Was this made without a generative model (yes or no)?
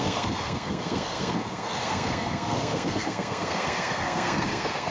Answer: no